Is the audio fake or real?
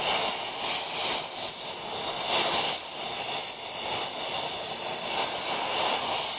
real